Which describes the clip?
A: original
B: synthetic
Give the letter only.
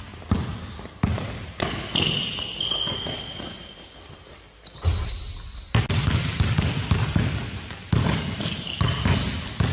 A